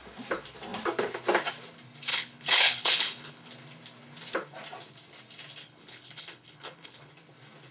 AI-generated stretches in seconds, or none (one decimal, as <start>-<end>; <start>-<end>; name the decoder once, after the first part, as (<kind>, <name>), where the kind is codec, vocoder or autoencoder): 2.1-3.5 (codec, HILCodec); 5.6-7.1